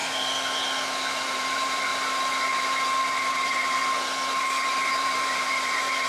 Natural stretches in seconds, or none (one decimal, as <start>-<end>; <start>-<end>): 0.0-1.2; 1.9-3.0; 3.8-4.4